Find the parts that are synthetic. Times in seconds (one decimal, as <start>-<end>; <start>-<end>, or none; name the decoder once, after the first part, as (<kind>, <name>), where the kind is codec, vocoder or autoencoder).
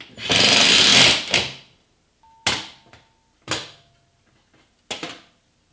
none